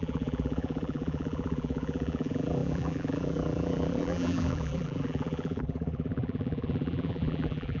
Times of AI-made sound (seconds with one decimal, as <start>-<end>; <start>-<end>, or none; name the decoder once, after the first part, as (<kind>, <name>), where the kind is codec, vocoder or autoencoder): 0.0-7.8 (vocoder, BigVGAN v2)

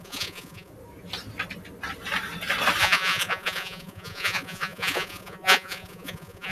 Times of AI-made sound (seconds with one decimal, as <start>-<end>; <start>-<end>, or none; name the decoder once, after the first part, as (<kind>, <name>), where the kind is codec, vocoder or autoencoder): 0.0-0.7 (vocoder, Vocos); 2.8-6.5

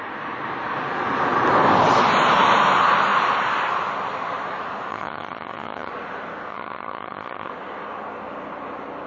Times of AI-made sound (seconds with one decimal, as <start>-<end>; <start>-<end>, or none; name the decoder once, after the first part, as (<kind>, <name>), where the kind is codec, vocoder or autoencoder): 4.9-5.9 (vocoder, HiFi-GAN); 6.5-7.5

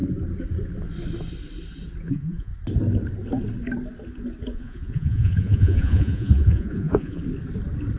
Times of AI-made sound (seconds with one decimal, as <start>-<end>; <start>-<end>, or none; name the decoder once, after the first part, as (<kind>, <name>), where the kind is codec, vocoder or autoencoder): 2.0-2.5 (vocoder, Vocos); 4.5-7.2